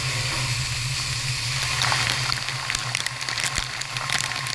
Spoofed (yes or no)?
no